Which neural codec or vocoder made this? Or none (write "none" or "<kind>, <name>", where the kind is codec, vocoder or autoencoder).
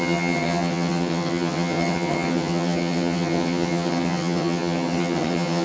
vocoder, HiFi-GAN